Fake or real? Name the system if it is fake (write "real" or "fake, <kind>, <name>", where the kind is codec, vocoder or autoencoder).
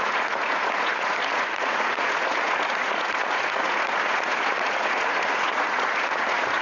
fake, vocoder, Vocos